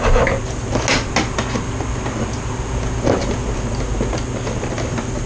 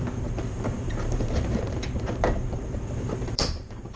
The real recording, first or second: first